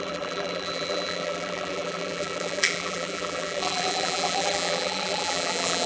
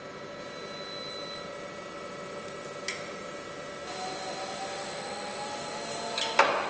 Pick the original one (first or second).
second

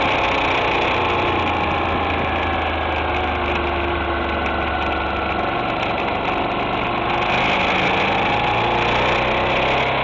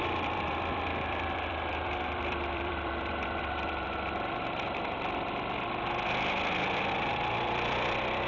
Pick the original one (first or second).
first